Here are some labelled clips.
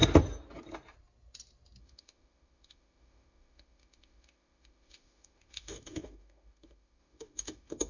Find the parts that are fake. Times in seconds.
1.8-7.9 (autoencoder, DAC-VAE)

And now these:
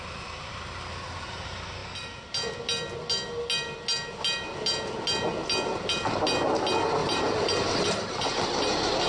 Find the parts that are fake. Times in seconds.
7.0-8.1 (vocoder, BigVGAN v2)

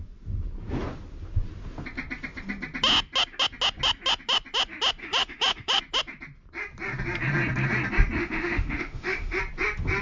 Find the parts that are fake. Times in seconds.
5.0-5.8 (autoencoder, DAC-VAE); 8.2-9.4

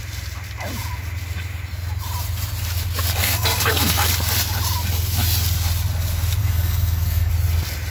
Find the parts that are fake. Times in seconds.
3.2-4.1 (codec, SNAC); 6.4-7.3

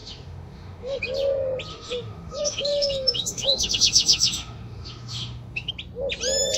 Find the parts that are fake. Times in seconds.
0.0-1.0 (autoencoder, DAC-VAE); 1.7-5.7